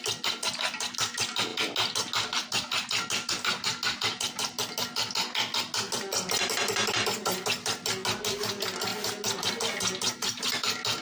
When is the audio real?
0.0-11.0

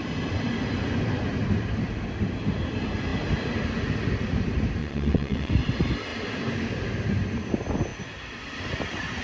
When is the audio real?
0.0-4.8; 5.5-9.2

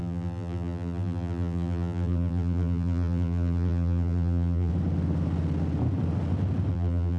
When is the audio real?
4.7-6.7

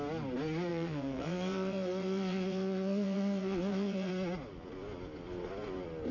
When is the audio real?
0.0-0.7; 4.1-6.1

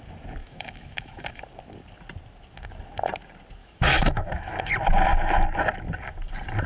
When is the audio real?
0.0-0.4; 1.4-3.6; 4.7-6.7

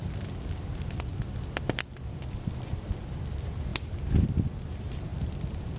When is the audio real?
0.0-5.8